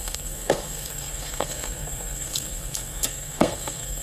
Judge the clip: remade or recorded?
remade